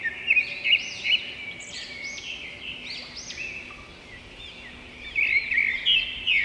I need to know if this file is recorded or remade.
recorded